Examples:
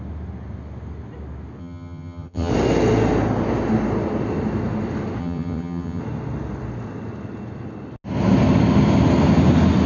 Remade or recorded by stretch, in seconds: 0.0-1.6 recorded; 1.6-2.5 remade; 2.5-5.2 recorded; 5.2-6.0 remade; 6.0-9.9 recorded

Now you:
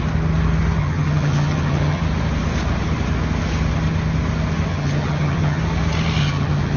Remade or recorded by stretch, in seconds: 0.0-0.8 recorded; 0.8-2.0 remade; 2.0-4.7 recorded; 4.7-5.6 remade; 5.6-6.2 recorded; 6.2-6.8 remade

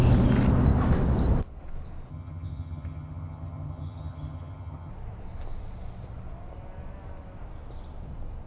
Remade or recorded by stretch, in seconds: 0.0-2.1 recorded; 2.1-4.9 remade; 4.9-8.5 recorded

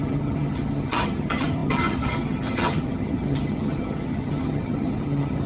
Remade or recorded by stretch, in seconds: 0.0-5.5 remade

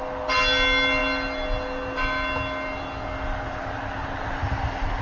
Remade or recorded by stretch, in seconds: 0.0-5.0 recorded